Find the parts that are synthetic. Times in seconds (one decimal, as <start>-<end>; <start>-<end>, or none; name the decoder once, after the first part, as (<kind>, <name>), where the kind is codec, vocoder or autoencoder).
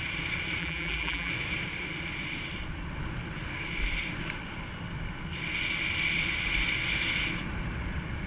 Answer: 0.6-1.3 (vocoder, BigVGAN v2)